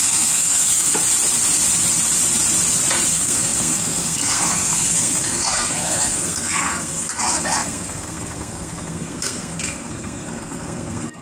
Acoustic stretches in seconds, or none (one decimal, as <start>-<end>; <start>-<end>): 0.9-3.1